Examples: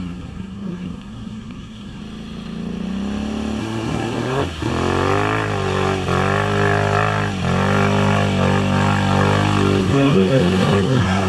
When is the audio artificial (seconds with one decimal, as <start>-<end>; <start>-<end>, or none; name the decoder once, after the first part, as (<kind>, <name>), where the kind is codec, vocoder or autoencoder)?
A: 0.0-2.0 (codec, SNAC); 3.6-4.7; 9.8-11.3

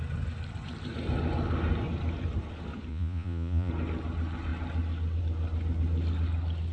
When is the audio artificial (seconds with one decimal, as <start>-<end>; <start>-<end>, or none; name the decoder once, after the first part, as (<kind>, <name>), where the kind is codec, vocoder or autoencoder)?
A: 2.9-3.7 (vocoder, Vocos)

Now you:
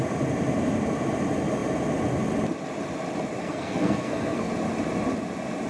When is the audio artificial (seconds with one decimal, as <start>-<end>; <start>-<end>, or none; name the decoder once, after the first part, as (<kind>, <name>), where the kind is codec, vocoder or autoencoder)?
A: 3.4-4.5 (codec, SNAC)

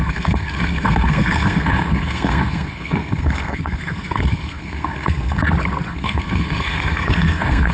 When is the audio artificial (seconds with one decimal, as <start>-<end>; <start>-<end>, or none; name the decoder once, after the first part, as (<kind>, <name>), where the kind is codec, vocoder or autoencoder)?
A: 0.0-5.4 (codec, SNAC); 5.9-7.7

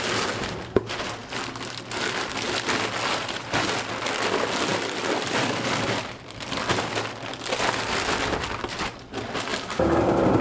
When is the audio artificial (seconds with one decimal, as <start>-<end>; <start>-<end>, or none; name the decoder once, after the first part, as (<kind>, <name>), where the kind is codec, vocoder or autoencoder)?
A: 4.7-6.9 (vocoder, BigVGAN v2); 9.5-10.4

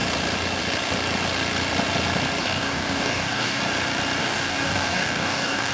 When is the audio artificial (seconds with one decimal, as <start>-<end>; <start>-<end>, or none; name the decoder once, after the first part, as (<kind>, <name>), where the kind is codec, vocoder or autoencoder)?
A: 2.4-3.6 (codec, DAC); 4.2-5.7

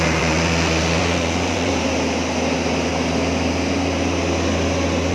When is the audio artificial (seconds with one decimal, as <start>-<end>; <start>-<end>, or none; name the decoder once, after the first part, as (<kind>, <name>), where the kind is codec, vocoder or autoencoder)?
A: 0.0-1.7 (vocoder, Vocos)

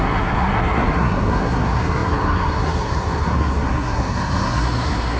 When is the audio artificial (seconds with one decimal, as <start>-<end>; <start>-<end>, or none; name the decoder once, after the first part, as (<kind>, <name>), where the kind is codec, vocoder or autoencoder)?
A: 0.0-5.2 (codec, SNAC)